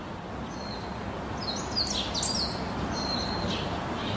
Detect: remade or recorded recorded